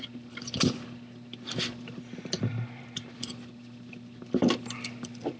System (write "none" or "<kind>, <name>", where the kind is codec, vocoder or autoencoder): none